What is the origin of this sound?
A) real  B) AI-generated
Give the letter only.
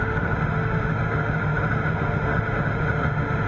B